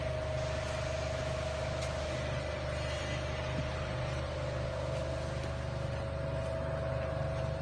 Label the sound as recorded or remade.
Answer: recorded